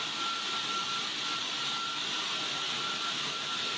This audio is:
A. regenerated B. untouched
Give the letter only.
B